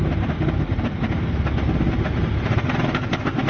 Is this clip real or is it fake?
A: real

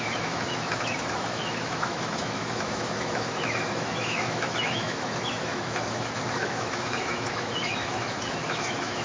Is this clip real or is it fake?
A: fake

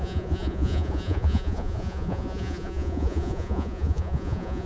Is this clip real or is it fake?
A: fake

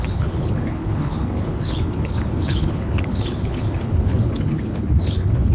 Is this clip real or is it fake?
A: fake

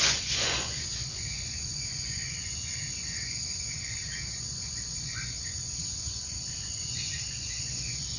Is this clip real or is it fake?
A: fake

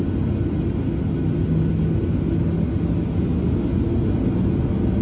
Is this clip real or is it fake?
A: real